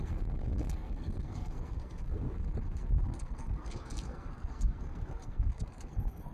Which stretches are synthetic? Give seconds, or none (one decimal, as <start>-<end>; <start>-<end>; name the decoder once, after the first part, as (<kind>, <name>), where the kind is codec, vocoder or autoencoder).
0.0-6.3 (codec, SNAC)